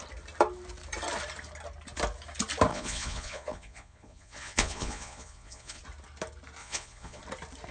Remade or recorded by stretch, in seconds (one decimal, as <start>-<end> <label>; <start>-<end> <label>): 0.0-2.7 recorded; 2.7-5.8 remade; 5.8-6.6 recorded; 6.6-7.2 remade; 7.2-7.7 recorded